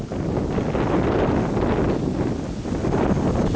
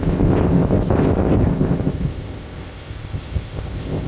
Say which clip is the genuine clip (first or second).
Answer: first